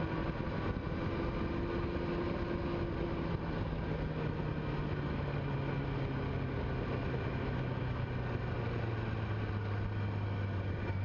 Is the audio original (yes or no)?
yes